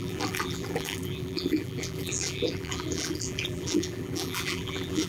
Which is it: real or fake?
fake